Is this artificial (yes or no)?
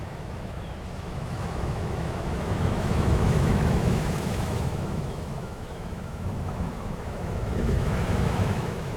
yes